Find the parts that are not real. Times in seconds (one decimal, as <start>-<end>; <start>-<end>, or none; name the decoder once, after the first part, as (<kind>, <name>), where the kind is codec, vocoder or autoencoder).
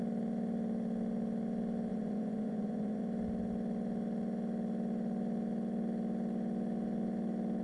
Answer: 1.9-3.0 (vocoder, Vocos)